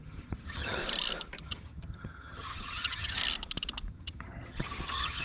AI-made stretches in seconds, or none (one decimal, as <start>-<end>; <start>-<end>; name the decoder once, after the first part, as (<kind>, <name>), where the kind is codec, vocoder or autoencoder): 0.0-0.8 (vocoder, HiFi-GAN); 1.4-3.2; 3.9-5.2